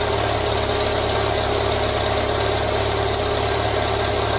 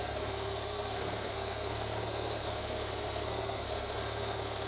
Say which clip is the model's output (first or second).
second